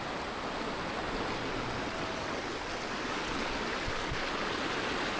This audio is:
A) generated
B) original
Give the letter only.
B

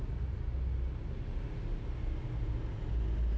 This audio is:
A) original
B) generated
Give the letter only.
A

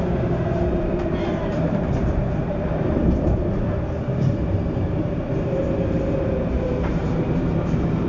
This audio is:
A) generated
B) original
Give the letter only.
A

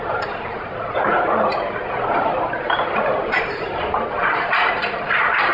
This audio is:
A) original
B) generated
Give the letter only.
B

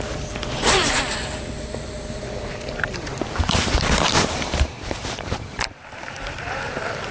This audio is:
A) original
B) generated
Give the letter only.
B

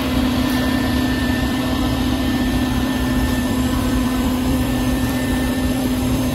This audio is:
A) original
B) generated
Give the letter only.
B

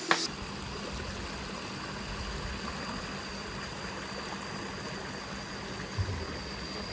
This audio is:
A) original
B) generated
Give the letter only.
A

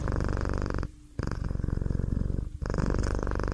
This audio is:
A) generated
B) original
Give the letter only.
A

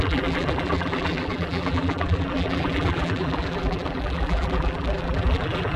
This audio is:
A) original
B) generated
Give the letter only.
B